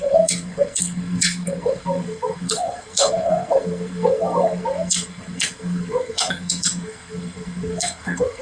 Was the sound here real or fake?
fake